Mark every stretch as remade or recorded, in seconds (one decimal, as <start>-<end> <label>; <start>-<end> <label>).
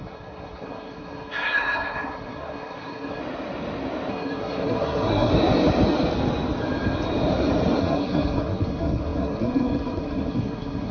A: 0.0-3.2 remade; 3.2-4.1 recorded; 4.1-5.3 remade; 5.3-7.8 recorded; 7.8-10.9 remade